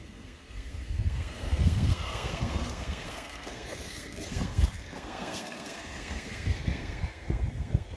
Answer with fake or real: fake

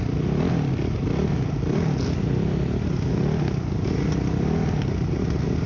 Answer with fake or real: real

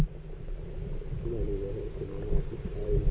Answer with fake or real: fake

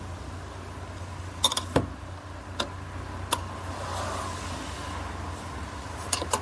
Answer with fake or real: real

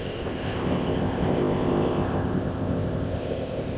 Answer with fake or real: fake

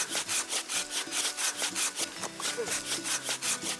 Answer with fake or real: real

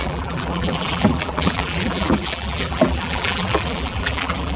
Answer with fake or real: fake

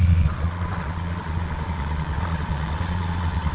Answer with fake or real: fake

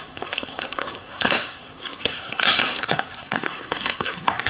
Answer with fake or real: fake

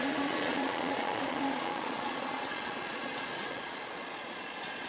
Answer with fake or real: fake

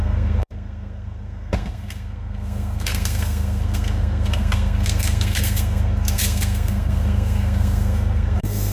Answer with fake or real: fake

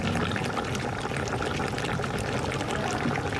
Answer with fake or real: real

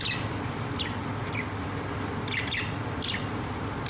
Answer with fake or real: real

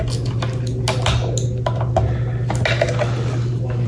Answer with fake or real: real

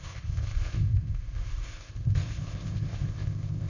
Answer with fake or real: fake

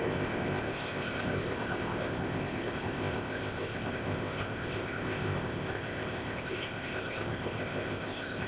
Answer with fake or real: fake